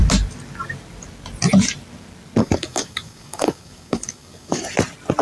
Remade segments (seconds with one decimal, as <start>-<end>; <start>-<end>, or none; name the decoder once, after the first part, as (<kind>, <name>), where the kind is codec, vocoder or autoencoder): 2.4-4.6 (codec, DAC)

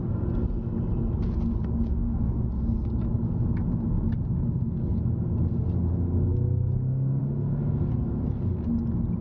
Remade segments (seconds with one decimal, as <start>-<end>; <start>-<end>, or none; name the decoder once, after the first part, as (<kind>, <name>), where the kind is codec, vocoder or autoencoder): 1.9-2.5 (autoencoder, DAC-VAE)

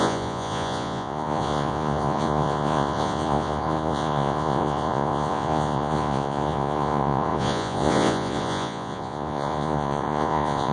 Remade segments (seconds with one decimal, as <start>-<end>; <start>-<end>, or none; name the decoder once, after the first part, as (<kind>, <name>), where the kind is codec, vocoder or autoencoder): 0.0-10.7 (vocoder, Vocos)

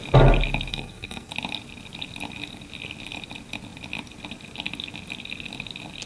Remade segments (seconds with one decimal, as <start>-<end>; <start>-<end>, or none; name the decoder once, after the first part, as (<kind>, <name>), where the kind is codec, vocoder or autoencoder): 0.7-1.3 (codec, SNAC)

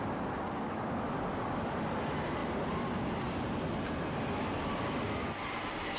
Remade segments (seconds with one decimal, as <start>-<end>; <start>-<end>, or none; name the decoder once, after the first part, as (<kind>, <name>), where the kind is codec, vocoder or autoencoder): none

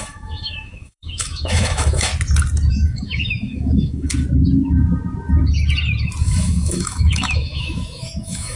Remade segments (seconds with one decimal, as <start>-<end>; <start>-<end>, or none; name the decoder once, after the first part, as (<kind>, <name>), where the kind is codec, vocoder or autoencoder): 0.0-2.1 (autoencoder, DAC-VAE); 2.7-4.1; 6.2-8.6

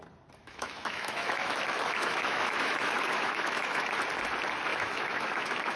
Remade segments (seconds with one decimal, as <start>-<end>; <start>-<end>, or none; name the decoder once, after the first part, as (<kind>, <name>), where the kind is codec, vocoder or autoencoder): 0.4-3.9 (autoencoder, DAC-VAE); 4.7-5.8